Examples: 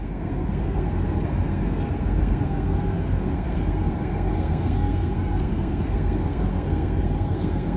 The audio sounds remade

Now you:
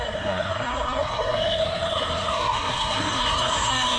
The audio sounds remade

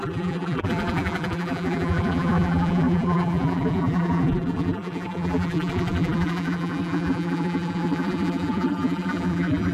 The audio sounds remade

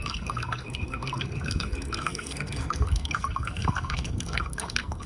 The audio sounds remade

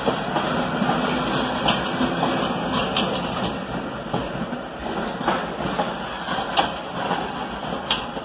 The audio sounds recorded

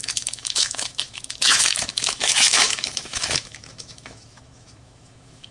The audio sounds remade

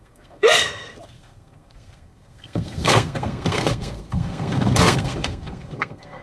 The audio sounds remade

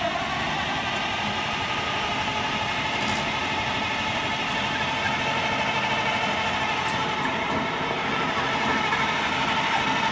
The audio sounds recorded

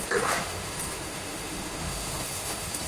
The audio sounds remade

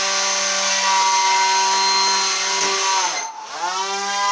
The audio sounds recorded